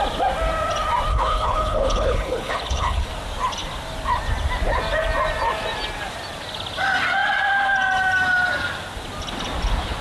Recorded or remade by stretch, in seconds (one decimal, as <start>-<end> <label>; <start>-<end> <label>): 0.0-1.1 recorded; 1.1-3.1 remade; 3.1-10.0 recorded